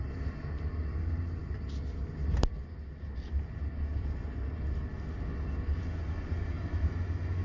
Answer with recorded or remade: recorded